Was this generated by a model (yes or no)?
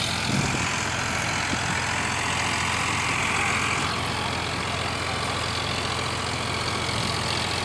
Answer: no